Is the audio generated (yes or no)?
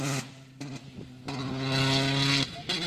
no